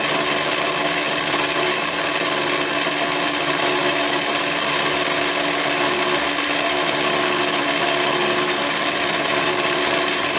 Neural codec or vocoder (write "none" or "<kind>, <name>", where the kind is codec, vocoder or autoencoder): none